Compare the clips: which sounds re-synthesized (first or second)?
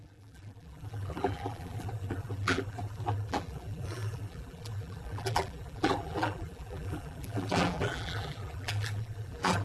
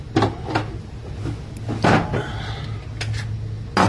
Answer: first